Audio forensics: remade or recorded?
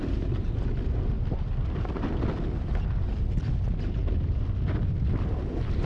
recorded